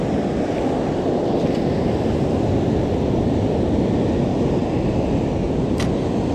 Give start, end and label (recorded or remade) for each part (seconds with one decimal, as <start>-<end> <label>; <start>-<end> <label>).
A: 0.0-6.3 recorded